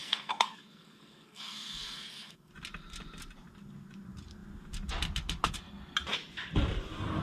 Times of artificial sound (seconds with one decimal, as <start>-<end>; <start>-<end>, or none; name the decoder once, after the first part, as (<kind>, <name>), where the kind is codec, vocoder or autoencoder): 0.0-2.5 (codec, SNAC)